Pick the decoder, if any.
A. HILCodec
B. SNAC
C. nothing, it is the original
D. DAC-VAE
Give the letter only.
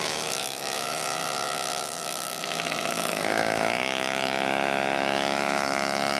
D